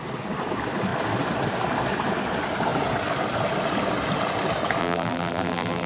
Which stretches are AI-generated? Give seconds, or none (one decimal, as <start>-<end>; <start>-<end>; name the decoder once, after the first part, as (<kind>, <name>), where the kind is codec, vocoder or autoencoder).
4.8-5.9 (vocoder, BigVGAN v2)